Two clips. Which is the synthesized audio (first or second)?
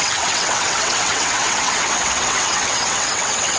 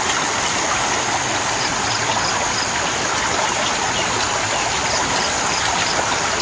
first